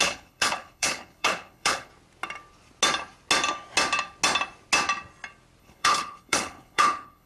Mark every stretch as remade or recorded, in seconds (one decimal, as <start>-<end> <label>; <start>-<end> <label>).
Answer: 0.0-1.9 remade; 1.9-5.6 recorded; 5.6-7.3 remade